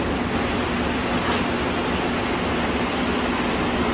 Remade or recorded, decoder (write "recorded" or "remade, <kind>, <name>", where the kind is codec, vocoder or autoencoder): recorded